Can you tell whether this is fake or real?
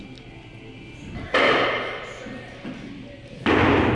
real